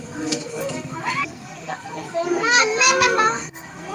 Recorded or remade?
remade